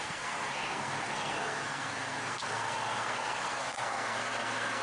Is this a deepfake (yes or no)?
yes